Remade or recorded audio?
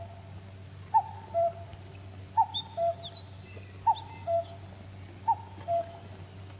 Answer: recorded